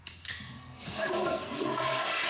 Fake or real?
fake